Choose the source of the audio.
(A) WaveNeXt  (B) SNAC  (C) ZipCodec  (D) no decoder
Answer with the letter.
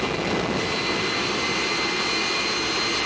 D